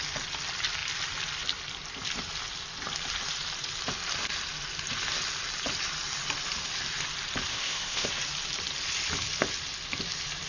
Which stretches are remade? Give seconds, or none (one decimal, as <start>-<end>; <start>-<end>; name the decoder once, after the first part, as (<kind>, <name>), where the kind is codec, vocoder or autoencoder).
7.5-8.1 (codec, ZipCodec)